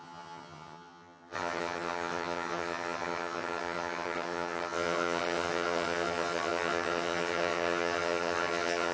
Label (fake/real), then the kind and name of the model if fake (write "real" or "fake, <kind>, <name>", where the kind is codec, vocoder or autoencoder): fake, vocoder, HiFi-GAN